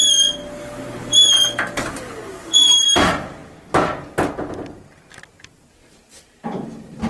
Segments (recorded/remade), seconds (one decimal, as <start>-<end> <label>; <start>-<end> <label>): 0.0-7.1 recorded